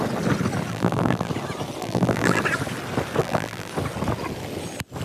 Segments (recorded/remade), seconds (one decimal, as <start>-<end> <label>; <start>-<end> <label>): 0.0-0.7 recorded; 0.7-1.3 remade; 1.3-1.8 recorded; 1.8-2.4 remade; 2.4-3.2 recorded; 3.2-3.7 remade; 3.7-5.0 recorded